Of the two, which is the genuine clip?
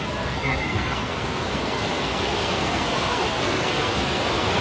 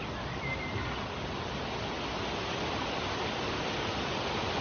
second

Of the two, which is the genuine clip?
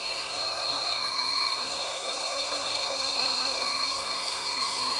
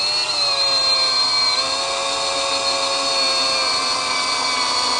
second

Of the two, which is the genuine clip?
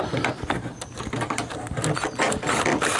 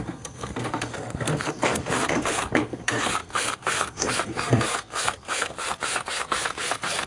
first